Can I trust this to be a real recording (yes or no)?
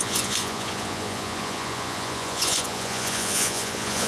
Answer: no